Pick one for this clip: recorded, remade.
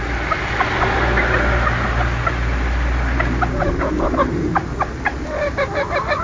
recorded